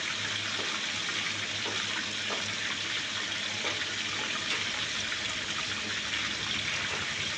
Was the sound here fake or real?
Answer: real